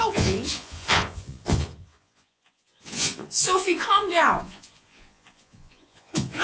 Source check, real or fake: fake